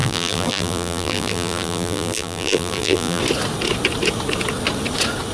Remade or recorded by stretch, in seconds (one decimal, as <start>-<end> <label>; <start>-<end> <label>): 0.0-3.2 remade; 3.2-5.3 recorded